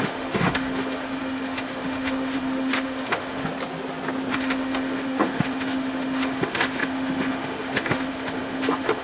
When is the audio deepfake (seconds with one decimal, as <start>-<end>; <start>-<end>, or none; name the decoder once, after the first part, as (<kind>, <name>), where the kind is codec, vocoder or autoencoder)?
0.0-3.4 (autoencoder, DAC-VAE); 4.3-9.0